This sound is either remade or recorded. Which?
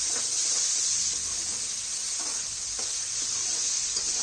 recorded